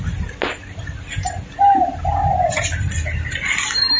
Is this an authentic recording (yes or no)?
yes